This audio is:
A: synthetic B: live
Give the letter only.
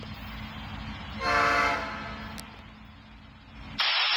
B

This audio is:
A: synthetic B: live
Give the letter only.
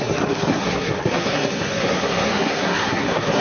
A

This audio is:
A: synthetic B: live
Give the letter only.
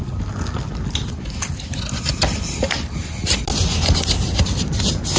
B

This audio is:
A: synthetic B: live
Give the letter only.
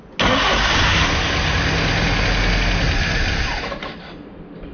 B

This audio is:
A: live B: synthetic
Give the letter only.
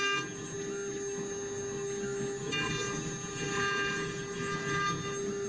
A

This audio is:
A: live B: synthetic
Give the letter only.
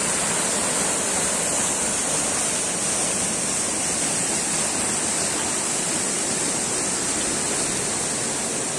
A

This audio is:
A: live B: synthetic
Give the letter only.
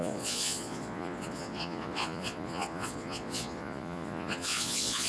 B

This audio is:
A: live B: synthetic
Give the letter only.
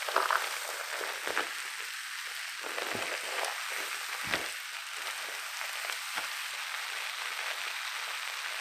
A